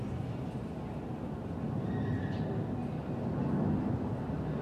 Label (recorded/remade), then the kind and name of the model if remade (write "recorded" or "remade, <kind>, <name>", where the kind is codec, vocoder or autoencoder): recorded